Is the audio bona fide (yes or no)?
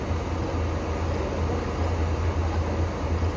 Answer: yes